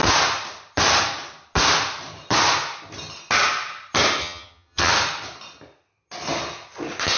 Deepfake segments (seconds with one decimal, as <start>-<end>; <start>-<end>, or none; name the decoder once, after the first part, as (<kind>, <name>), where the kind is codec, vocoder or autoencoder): 4.2-4.9 (vocoder, HiFi-GAN)

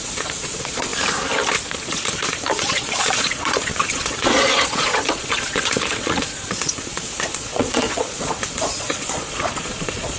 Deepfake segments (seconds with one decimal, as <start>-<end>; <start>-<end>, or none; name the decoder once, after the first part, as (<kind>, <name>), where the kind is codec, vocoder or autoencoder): 0.0-0.9 (vocoder, Vocos); 1.8-10.2